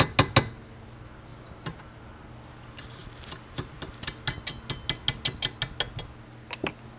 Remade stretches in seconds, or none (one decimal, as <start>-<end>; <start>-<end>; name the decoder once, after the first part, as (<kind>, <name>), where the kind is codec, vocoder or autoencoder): 1.3-2.0 (vocoder, BigVGAN v2); 3.0-4.1